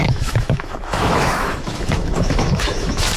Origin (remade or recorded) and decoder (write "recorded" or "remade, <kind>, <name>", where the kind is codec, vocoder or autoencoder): remade, autoencoder, DAC-VAE